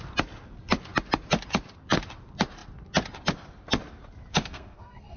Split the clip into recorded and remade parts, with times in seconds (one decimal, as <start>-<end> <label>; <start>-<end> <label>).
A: 0.0-4.3 recorded; 4.3-5.2 remade